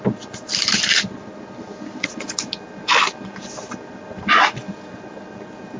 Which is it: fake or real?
real